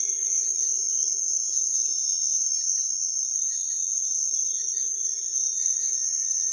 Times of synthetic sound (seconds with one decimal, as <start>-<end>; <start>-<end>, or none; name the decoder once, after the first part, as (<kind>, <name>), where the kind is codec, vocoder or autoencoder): none